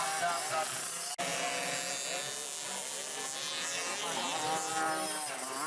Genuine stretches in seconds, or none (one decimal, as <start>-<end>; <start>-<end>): 0.0-5.7